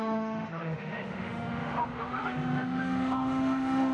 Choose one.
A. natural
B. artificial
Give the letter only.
B